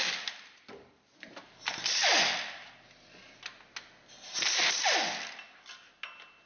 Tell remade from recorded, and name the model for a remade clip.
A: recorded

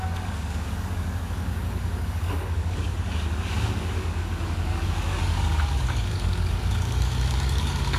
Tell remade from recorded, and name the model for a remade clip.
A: remade, codec, DAC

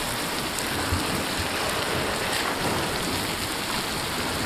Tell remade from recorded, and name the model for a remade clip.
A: recorded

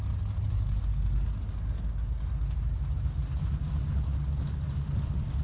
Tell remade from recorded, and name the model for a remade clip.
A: recorded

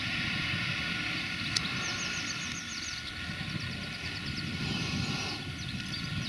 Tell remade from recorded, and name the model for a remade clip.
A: recorded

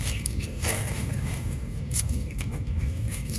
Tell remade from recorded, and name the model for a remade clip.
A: remade, codec, DAC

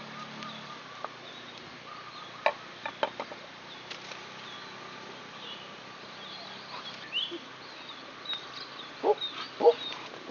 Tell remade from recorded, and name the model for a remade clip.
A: recorded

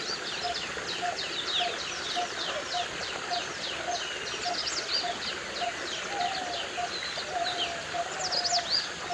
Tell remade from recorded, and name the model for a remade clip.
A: recorded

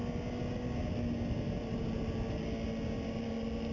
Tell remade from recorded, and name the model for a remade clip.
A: recorded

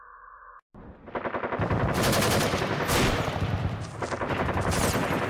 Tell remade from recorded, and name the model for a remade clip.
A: recorded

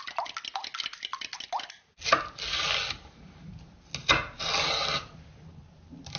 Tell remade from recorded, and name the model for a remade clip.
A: recorded